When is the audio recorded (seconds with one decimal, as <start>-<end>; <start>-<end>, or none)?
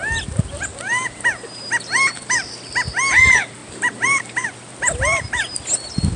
0.0-0.7; 2.5-3.6; 4.5-6.2